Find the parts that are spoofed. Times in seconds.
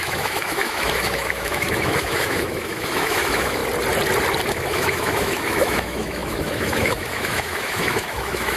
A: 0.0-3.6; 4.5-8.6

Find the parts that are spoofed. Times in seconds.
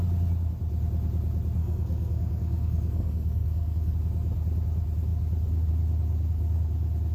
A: 1.6-3.9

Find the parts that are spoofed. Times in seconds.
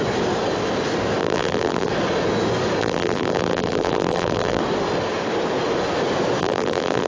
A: 1.2-1.9; 2.8-4.6; 6.4-7.1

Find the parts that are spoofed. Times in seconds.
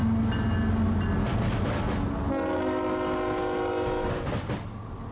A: none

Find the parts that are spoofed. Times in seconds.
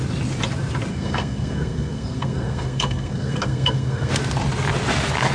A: 0.9-4.1